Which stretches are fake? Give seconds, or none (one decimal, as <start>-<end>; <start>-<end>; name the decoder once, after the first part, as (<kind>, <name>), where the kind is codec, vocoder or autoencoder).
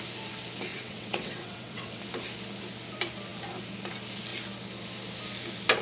0.7-2.0 (vocoder, WaveNeXt)